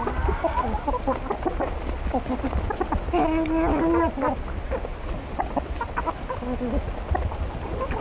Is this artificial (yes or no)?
no